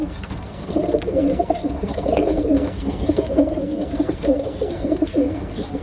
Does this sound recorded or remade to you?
remade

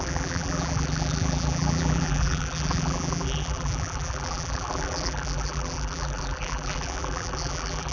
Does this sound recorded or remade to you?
remade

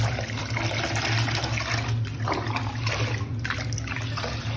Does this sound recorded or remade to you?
recorded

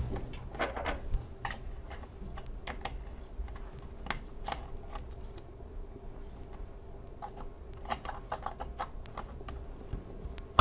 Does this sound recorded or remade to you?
recorded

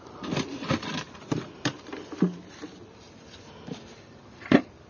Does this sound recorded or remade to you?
remade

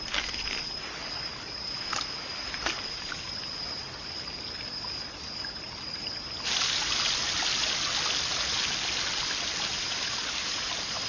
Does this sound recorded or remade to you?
recorded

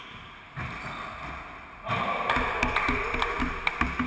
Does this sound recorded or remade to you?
recorded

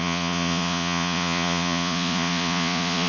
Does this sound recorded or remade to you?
remade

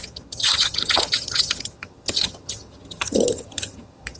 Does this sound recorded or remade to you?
remade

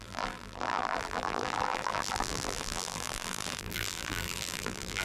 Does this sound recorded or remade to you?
remade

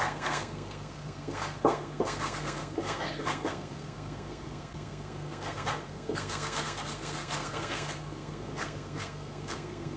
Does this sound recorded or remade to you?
remade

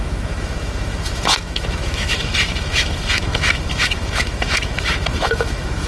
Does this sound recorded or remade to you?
remade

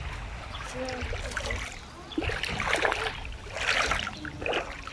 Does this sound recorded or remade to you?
recorded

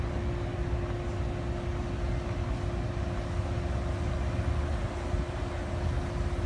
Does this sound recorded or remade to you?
recorded